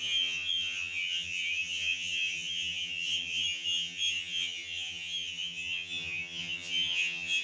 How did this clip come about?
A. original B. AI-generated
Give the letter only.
B